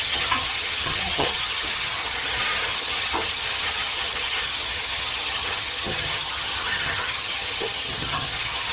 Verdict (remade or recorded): remade